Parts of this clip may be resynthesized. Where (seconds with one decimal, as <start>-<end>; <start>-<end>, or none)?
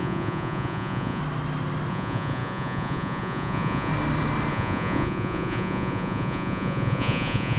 0.0-1.2; 1.9-3.9; 4.5-7.6